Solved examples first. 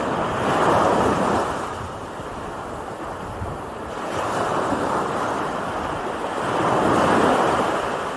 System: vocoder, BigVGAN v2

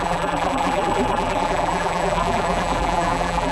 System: vocoder, BigVGAN v2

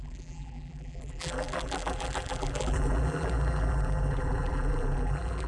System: vocoder, BigVGAN v2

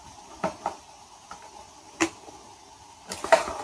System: none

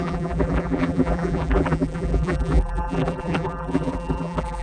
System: vocoder, BigVGAN v2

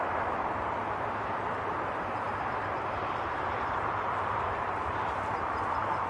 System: vocoder, BigVGAN v2